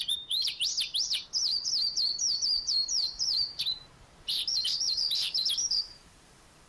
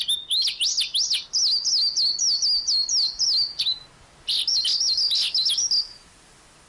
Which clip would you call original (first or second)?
second